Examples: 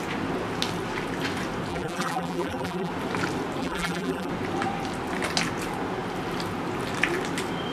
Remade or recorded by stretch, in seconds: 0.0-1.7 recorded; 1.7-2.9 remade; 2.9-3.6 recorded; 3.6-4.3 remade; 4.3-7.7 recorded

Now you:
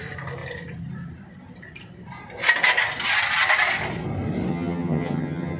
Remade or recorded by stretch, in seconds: 0.0-4.5 recorded; 4.5-5.6 remade

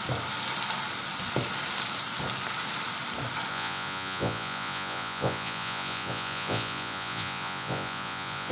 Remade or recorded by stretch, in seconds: 0.0-3.5 recorded; 3.5-8.5 remade

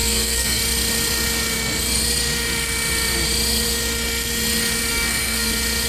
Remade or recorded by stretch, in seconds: 0.0-0.6 remade; 0.6-4.9 recorded; 4.9-5.5 remade; 5.5-5.9 recorded

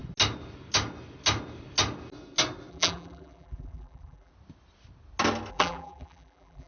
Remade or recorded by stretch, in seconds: 0.0-2.7 recorded; 2.7-4.3 remade; 4.3-5.5 recorded; 5.5-6.7 remade

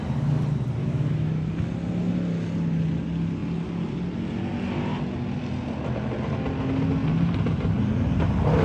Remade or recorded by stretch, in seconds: 0.0-0.8 recorded; 0.8-1.3 remade; 1.3-8.6 recorded

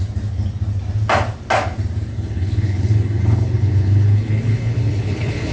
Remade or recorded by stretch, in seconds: 0.0-2.1 recorded; 2.1-5.5 remade

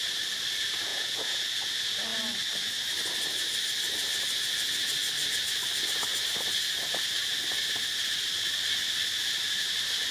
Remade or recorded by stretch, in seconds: 0.0-0.9 recorded; 0.9-1.4 remade; 1.4-10.1 recorded